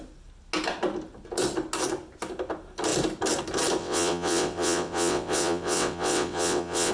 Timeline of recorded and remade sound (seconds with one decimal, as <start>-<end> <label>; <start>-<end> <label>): 0.0-3.8 recorded; 3.8-6.9 remade